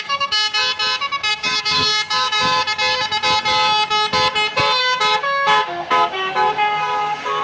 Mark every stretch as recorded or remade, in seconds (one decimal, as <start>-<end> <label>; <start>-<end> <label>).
0.0-0.6 remade; 0.6-1.3 recorded; 1.3-2.6 remade; 2.6-4.8 recorded; 4.8-7.4 remade